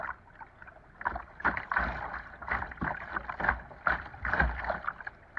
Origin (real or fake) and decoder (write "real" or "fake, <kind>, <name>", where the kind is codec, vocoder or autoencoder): fake, vocoder, BigVGAN v2